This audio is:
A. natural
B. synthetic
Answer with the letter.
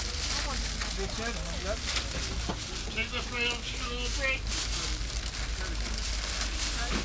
A